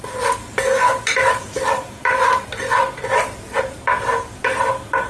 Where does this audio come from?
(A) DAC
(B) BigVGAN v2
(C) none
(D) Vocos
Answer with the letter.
C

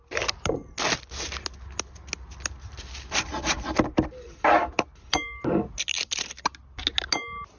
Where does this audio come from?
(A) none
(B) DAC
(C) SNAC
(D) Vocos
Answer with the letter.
A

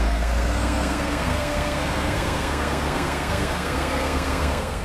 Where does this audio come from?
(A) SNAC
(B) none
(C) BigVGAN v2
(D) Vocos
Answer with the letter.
A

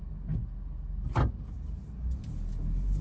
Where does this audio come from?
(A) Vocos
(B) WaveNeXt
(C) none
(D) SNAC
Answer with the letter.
C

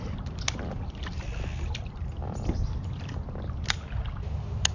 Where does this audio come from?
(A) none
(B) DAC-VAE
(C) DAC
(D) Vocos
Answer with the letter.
A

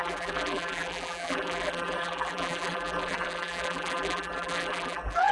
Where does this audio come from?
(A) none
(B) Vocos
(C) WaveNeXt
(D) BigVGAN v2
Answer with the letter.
D